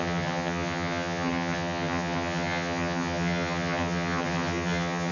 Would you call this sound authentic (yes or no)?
no